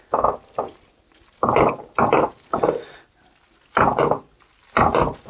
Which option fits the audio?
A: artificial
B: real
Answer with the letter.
B